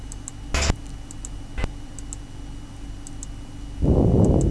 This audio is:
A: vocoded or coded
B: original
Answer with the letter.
B